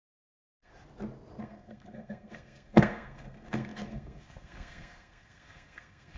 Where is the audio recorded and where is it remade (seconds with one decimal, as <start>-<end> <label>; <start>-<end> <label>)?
0.0-0.7 remade; 0.7-1.4 recorded; 1.4-6.2 remade